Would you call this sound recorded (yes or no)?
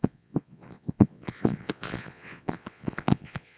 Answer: no